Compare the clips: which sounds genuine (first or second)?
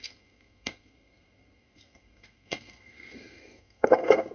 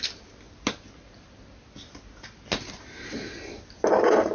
second